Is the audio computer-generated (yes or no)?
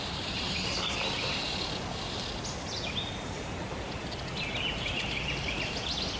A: no